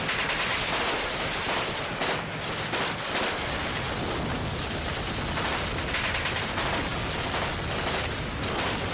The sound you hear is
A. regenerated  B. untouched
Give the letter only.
B